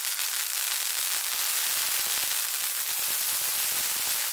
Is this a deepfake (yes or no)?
no